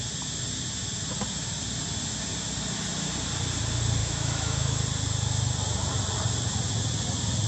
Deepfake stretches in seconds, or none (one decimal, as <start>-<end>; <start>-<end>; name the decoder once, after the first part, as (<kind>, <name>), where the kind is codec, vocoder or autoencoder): 4.0-4.8 (autoencoder, DAC-VAE)